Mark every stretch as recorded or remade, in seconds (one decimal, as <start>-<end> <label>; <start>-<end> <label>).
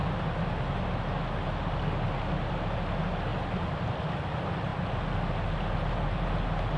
0.0-6.8 recorded